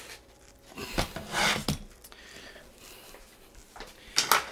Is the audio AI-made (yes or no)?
no